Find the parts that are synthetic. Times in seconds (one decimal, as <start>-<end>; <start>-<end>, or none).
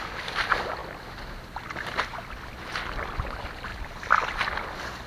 none